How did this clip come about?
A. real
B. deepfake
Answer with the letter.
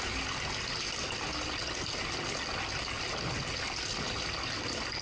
A